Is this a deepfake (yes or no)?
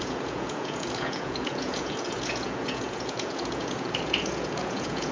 yes